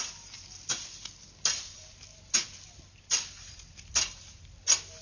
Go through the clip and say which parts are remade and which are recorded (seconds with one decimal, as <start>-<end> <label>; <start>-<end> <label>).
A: 0.0-5.0 recorded